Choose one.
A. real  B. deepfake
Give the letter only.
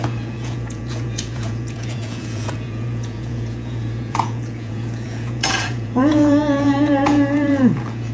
B